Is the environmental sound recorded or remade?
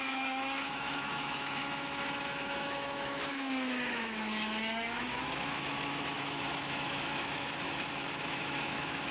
remade